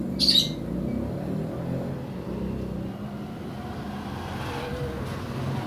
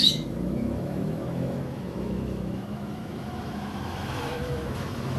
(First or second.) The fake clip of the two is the second